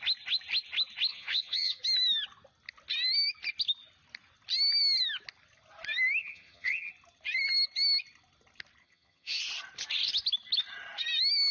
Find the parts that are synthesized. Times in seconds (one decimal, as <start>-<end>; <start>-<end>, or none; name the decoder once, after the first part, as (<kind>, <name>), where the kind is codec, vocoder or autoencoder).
1.1-1.8 (vocoder, HiFi-GAN); 6.2-6.9; 8.8-9.4